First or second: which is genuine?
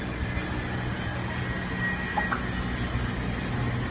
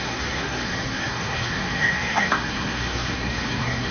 first